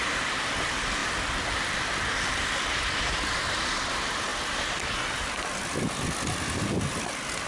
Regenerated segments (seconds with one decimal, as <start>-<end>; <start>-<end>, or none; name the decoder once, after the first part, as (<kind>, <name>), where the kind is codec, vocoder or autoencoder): 0.0-4.3 (vocoder, BigVGAN v2); 6.9-7.5